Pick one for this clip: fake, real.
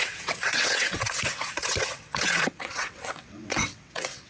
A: fake